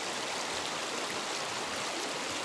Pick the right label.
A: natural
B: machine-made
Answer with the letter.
A